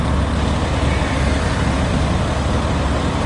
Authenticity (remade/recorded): recorded